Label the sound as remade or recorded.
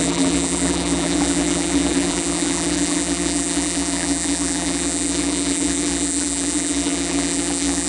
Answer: remade